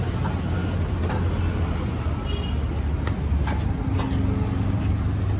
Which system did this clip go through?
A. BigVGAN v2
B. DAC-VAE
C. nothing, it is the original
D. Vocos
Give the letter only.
C